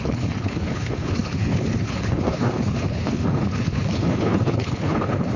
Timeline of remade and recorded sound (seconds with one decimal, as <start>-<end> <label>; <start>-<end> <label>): 0.0-5.4 remade